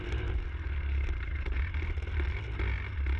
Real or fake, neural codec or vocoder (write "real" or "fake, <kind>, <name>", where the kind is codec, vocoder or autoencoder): real